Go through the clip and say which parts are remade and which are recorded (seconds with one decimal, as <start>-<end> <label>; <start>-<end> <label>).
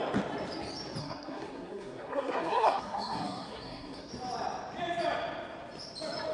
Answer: 0.0-1.0 recorded; 1.0-4.1 remade; 4.1-6.3 recorded